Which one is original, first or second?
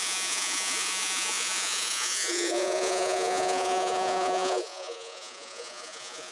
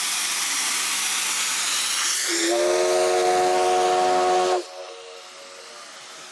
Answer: second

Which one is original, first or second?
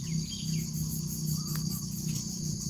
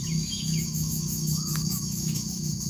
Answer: first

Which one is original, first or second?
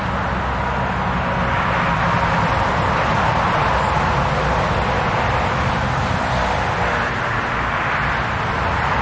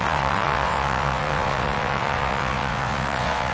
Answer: first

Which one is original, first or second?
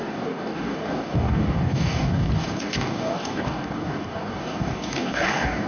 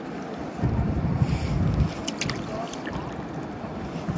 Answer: second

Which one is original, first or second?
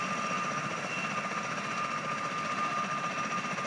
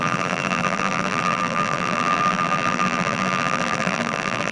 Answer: first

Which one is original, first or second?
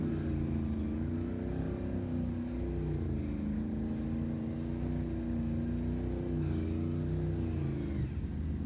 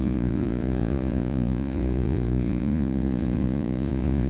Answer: first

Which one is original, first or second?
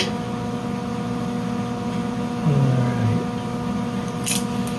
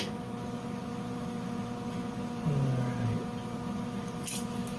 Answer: first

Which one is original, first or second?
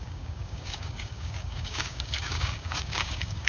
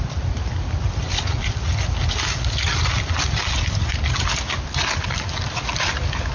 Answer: second